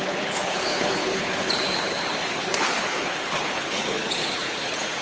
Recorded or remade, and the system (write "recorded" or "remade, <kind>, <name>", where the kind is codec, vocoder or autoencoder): remade, codec, HILCodec